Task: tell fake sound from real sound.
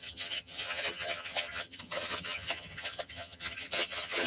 fake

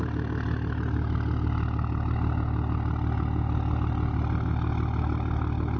real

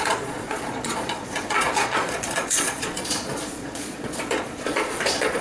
fake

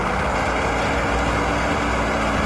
real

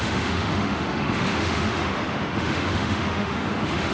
fake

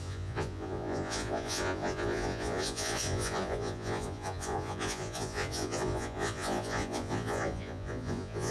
fake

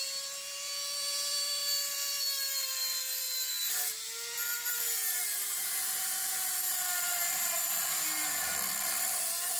fake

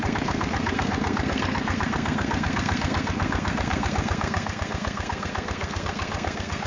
fake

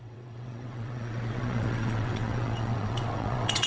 fake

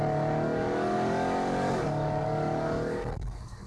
fake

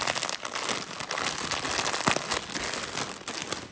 real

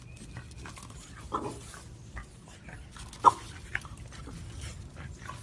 real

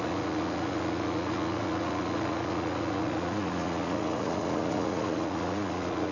fake